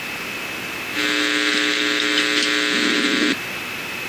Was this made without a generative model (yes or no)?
yes